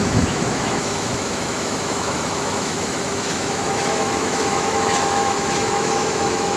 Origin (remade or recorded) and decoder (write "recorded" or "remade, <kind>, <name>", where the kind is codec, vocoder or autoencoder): remade, autoencoder, DAC-VAE